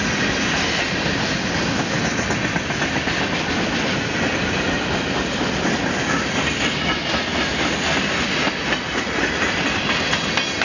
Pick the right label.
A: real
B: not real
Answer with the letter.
A